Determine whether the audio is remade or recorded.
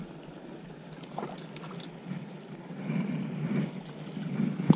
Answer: recorded